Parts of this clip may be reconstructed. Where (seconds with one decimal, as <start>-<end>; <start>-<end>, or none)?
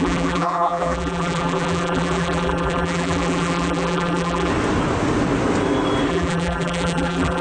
0.0-4.5; 6.1-7.4